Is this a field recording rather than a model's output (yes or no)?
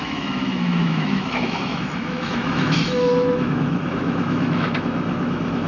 no